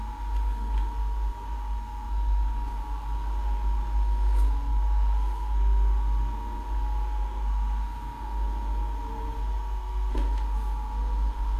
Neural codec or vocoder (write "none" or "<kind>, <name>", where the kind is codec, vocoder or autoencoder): codec, SNAC